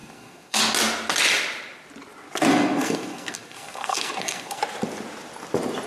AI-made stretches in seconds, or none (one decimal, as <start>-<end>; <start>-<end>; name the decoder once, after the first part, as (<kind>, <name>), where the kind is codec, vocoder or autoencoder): 0.0-0.6 (codec, SNAC); 2.5-4.6